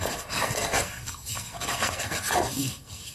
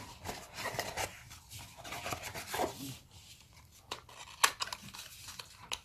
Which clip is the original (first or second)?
second